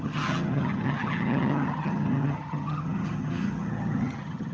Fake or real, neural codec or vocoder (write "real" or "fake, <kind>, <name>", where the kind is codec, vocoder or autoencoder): fake, vocoder, HiFi-GAN